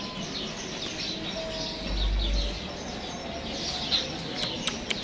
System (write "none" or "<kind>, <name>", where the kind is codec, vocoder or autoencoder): none